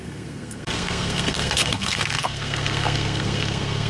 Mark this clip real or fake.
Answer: fake